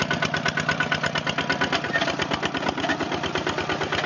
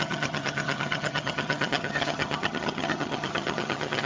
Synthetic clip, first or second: second